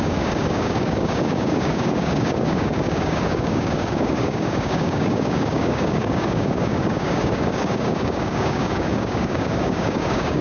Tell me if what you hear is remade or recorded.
remade